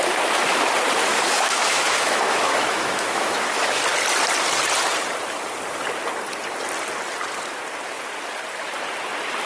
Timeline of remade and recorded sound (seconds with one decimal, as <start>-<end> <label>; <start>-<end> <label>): 0.0-1.1 recorded; 1.1-3.8 remade; 3.8-9.5 recorded